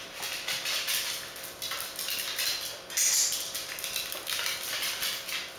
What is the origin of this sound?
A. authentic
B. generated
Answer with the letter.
A